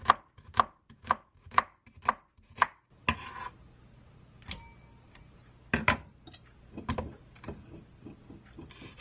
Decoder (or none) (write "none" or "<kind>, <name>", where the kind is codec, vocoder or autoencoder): none